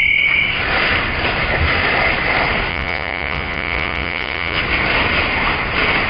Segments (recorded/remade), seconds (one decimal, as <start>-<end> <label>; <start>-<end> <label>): 0.0-2.7 recorded; 2.7-4.6 remade; 4.6-6.1 recorded